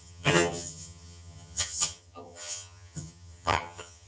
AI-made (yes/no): yes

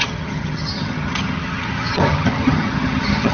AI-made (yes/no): yes